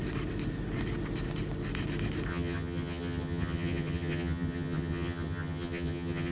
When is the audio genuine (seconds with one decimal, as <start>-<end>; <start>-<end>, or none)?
0.0-2.3